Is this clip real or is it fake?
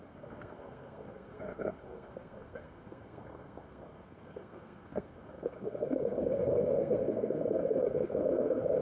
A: fake